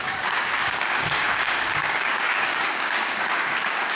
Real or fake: fake